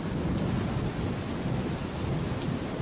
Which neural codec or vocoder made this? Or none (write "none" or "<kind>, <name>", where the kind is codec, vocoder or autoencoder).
none